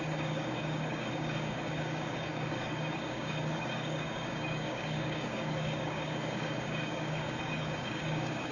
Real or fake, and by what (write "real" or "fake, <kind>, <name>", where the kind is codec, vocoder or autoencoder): fake, codec, DAC